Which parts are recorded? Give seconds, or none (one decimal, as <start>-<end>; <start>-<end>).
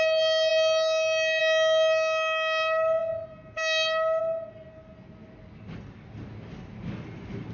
0.0-7.5